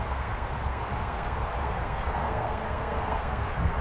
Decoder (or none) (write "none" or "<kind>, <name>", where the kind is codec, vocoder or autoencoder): codec, SNAC